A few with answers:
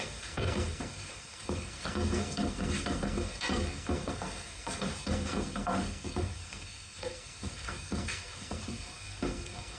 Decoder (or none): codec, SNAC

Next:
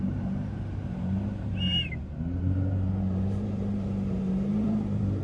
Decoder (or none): vocoder, BigVGAN v2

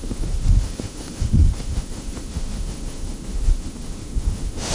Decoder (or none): autoencoder, DAC-VAE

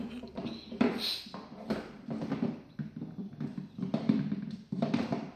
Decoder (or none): vocoder, BigVGAN v2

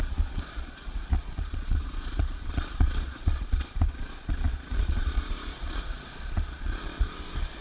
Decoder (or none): vocoder, Vocos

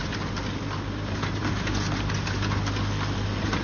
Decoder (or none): none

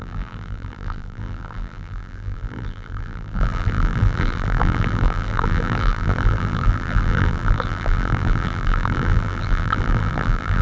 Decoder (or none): vocoder, BigVGAN v2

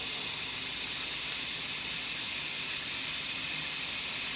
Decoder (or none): none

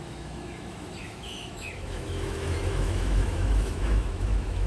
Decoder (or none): autoencoder, DAC-VAE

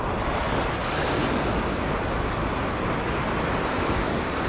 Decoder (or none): none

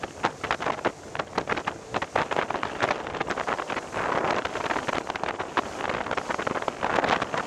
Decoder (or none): none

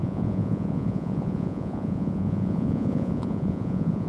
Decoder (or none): vocoder, Vocos